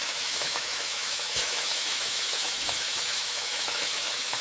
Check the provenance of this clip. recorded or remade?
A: remade